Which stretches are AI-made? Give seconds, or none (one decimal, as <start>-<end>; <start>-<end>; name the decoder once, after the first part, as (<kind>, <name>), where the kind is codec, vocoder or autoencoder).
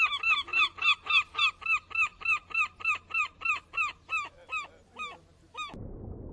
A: 0.5-1.5 (vocoder, BigVGAN v2); 2.1-4.3